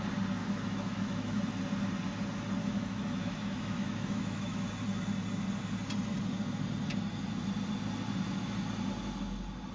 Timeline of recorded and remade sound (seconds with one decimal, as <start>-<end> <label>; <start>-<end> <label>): 0.0-0.4 recorded; 0.4-1.4 remade; 1.4-2.6 recorded; 2.6-4.7 remade; 4.7-9.7 recorded